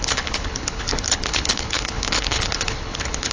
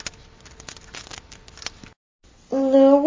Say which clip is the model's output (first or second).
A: first